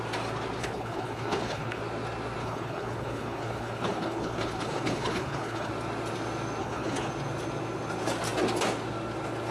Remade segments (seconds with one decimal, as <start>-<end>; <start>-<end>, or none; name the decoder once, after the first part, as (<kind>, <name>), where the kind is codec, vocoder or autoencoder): 0.6-1.8 (codec, HILCodec); 2.4-5.7; 6.6-7.1